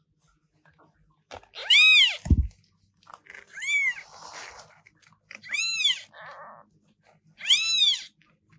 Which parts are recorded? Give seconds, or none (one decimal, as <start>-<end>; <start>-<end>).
0.0-8.6